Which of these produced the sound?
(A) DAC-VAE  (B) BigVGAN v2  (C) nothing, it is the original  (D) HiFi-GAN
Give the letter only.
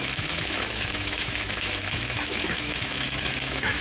A